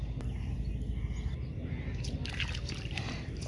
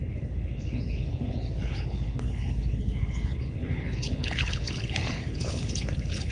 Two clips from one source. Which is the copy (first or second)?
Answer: second